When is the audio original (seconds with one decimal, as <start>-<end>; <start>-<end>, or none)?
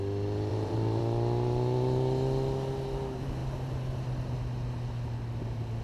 0.0-0.5; 1.0-5.8